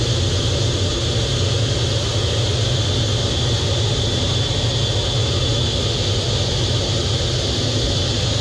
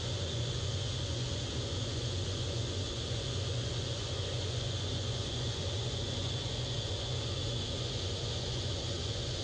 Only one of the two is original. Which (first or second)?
first